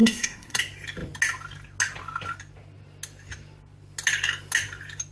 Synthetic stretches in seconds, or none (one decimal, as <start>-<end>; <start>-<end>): 0.0-0.6